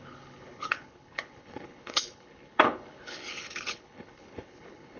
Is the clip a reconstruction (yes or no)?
yes